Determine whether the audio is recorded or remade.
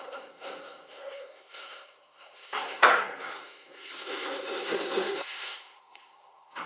remade